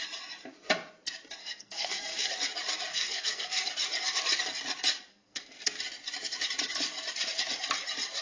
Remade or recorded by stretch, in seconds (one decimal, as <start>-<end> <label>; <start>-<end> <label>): 0.0-1.4 recorded; 1.4-2.3 remade; 2.3-2.9 recorded; 2.9-3.7 remade; 3.7-5.1 recorded; 5.1-5.8 remade; 5.8-8.2 recorded